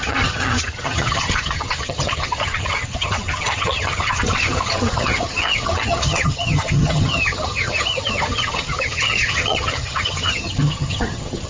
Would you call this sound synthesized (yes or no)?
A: yes